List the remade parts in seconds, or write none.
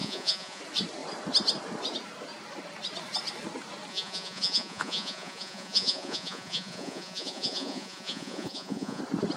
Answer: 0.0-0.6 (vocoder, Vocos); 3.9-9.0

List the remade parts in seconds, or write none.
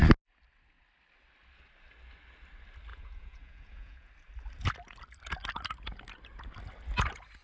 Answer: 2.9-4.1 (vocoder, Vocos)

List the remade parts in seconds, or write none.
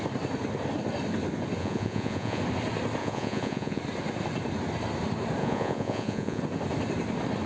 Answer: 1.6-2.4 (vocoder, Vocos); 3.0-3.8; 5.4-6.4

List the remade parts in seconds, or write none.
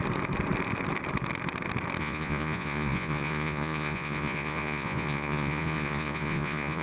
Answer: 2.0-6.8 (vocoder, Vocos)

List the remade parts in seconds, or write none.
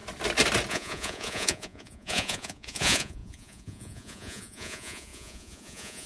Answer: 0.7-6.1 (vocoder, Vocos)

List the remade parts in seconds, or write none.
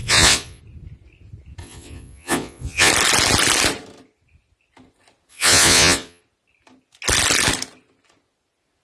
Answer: 0.0-0.6 (vocoder, Vocos); 1.6-2.9; 5.3-6.2